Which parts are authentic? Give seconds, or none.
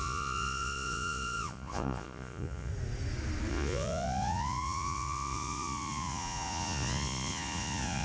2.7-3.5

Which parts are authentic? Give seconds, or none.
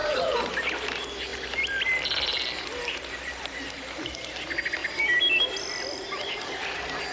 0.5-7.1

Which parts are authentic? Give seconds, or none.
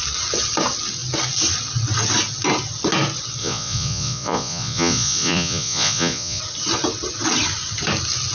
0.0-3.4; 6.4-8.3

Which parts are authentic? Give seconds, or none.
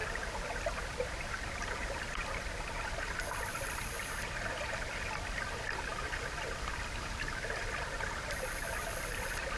0.0-9.6